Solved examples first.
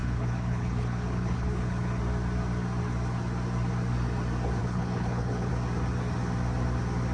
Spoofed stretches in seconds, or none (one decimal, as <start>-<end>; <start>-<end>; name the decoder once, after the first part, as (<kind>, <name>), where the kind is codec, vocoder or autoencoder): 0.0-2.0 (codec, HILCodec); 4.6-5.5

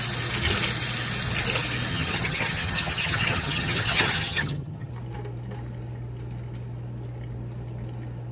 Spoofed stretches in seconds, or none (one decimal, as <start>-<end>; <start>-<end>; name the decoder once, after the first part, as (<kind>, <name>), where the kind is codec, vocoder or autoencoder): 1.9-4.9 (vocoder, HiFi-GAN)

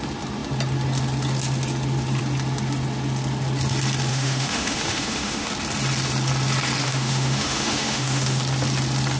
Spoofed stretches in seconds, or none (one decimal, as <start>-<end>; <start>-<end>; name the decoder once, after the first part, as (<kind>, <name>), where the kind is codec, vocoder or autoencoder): 4.1-5.5 (autoencoder, DAC-VAE); 6.8-8.4

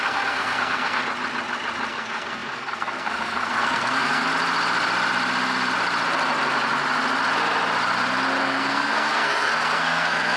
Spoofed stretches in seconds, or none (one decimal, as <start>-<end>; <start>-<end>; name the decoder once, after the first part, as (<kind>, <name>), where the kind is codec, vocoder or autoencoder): 0.0-1.0 (codec, SNAC); 1.9-4.3; 8.4-10.4

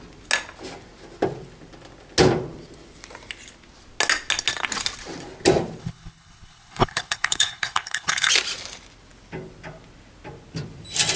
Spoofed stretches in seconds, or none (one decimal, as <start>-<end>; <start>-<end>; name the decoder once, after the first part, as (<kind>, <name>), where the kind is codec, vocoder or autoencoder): 5.8-8.3 (codec, HILCodec)

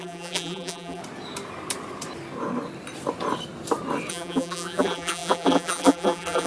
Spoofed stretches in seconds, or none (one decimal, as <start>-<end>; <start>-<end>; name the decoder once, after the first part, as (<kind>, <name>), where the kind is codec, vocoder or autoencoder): 0.0-1.0 (vocoder, BigVGAN v2); 4.1-6.5